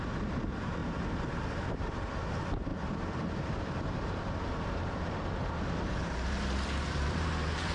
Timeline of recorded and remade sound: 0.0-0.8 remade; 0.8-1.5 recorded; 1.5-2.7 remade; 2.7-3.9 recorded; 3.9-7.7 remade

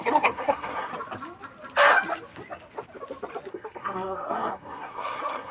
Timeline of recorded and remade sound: 0.0-0.9 remade; 0.9-3.5 recorded; 3.5-5.5 remade

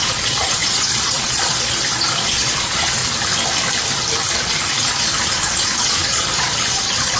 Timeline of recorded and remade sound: 0.0-3.0 remade; 3.0-4.3 recorded; 4.3-7.2 remade

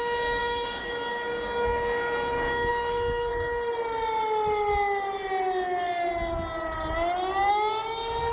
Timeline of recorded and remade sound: 0.0-3.3 remade; 3.3-7.5 recorded; 7.5-8.3 remade

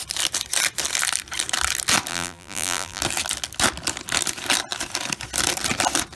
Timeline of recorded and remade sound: 0.0-2.1 recorded; 2.1-3.0 remade; 3.0-6.2 recorded

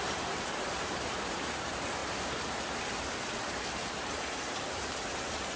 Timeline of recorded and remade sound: 0.0-5.6 remade